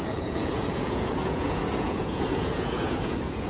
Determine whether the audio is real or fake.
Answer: fake